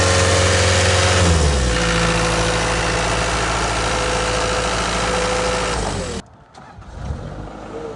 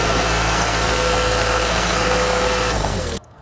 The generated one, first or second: second